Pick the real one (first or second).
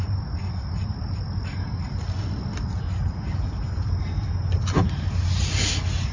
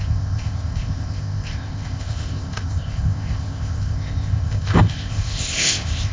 first